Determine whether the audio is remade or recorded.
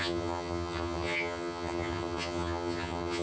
remade